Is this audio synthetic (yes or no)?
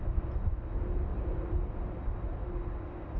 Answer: no